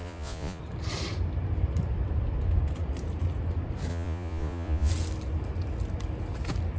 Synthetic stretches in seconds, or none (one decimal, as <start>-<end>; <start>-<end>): 0.0-0.6; 3.9-4.9

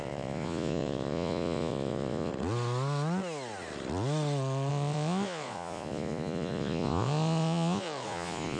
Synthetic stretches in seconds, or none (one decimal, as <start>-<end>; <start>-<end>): 0.0-2.3; 4.7-8.6

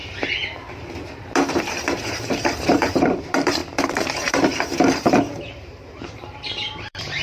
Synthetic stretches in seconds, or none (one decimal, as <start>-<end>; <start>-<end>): 1.5-7.2

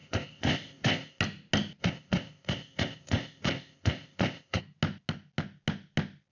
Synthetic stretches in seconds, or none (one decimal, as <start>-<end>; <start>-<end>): 0.0-1.2; 1.8-4.6

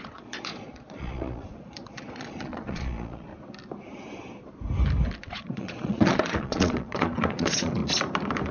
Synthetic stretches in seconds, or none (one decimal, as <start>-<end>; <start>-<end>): 0.0-3.3; 5.2-7.8